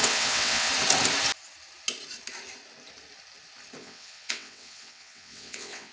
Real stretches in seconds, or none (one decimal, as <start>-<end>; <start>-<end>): 0.7-3.8